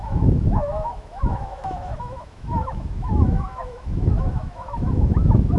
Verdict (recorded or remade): remade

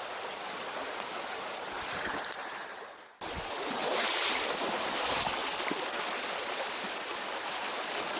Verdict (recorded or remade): recorded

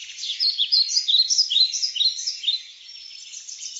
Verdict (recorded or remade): remade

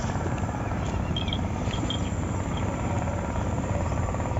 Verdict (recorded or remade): remade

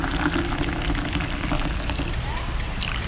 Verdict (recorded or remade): recorded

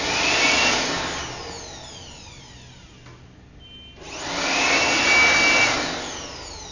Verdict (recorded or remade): recorded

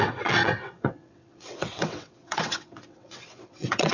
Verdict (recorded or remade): remade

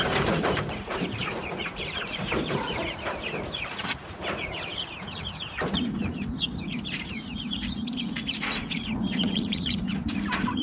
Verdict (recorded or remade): remade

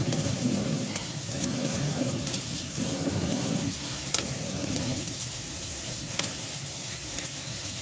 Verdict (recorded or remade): remade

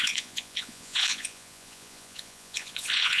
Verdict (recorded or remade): remade